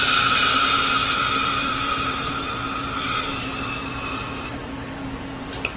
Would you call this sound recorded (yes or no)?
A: no